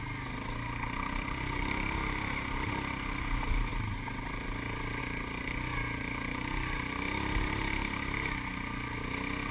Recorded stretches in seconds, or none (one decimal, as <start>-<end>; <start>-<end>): 0.0-9.5